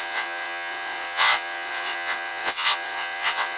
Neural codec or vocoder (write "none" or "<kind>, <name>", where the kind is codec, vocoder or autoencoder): vocoder, WaveNeXt